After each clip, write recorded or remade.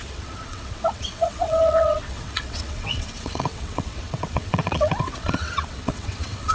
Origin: remade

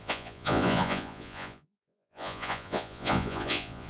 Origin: remade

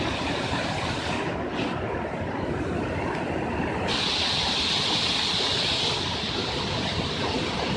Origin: recorded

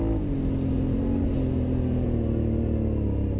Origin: recorded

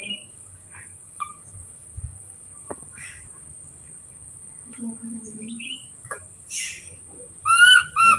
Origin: remade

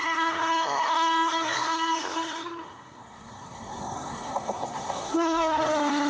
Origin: remade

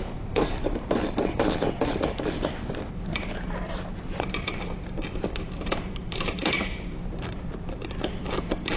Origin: remade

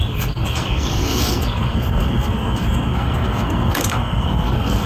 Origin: remade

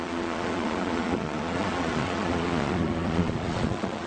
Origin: remade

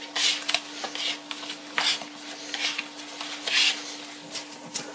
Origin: recorded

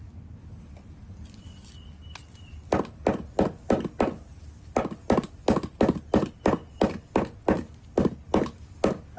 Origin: recorded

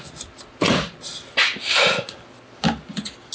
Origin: recorded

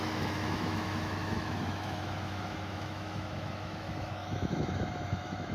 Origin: remade